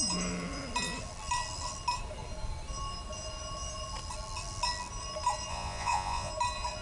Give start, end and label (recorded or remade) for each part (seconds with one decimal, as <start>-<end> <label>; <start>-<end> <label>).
0.0-5.5 recorded; 5.5-6.3 remade; 6.3-6.8 recorded